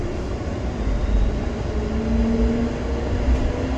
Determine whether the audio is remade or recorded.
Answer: recorded